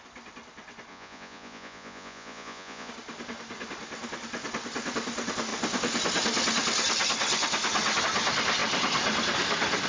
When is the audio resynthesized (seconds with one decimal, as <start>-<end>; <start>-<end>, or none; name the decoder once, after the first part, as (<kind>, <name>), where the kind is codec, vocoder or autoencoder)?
0.9-2.9 (vocoder, Vocos)